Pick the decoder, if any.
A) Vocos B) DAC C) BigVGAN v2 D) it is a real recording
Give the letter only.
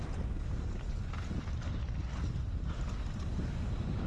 D